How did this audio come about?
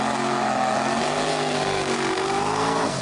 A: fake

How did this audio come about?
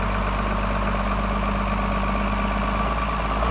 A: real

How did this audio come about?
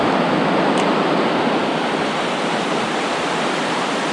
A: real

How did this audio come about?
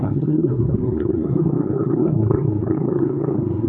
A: fake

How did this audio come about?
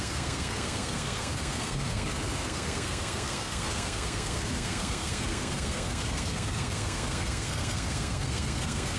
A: fake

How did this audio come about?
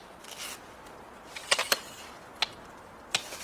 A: real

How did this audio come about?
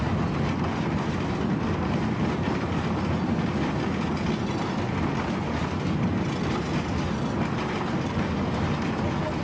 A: real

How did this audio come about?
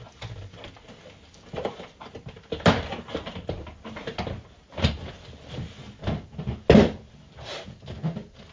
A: real